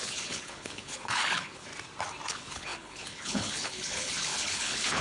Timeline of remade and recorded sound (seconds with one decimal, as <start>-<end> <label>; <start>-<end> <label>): 0.0-1.7 remade; 1.7-2.3 recorded; 2.3-5.0 remade